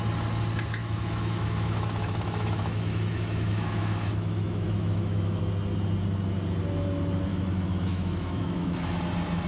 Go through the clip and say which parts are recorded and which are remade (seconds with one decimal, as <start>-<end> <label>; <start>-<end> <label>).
0.0-0.8 recorded; 0.8-5.4 remade; 5.4-7.3 recorded; 7.3-9.0 remade; 9.0-9.5 recorded